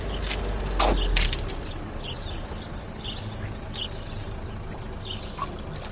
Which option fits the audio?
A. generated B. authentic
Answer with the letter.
B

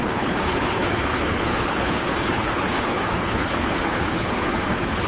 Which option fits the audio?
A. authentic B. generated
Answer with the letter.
B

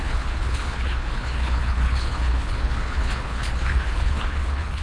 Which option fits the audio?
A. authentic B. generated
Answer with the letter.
B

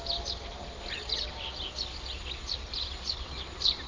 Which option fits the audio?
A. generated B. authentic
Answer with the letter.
B